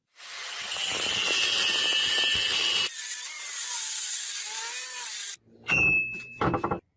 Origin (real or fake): real